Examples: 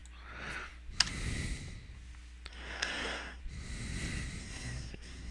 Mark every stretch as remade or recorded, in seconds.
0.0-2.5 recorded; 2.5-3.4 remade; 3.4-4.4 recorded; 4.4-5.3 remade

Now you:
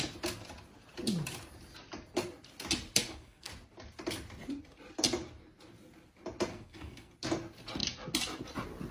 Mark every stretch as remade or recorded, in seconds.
0.0-3.0 recorded; 3.0-3.5 remade; 3.5-6.5 recorded; 6.5-7.1 remade; 7.1-8.9 recorded

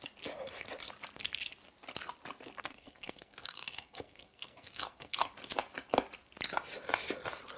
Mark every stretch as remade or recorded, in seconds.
0.0-2.6 recorded; 2.6-5.3 remade; 5.3-7.6 recorded